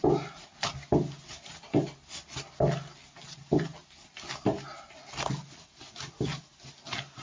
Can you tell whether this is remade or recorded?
recorded